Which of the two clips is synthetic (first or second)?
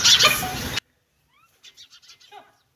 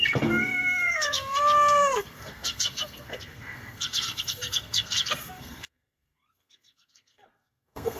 second